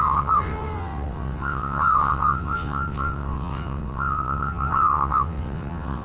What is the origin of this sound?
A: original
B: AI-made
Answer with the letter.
B